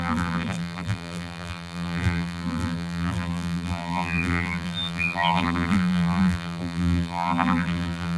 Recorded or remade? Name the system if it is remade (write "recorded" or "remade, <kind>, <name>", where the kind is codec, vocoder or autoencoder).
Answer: remade, vocoder, BigVGAN v2